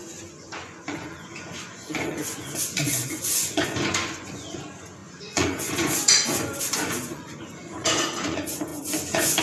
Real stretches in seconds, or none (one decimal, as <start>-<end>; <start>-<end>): none